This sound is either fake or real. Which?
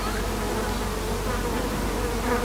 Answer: real